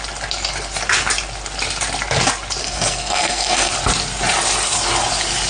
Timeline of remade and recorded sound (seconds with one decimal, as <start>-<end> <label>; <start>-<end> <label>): 0.0-2.6 recorded; 2.6-3.7 remade; 3.7-5.5 recorded